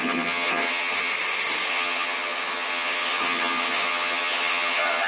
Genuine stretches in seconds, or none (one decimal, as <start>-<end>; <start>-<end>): 1.1-1.7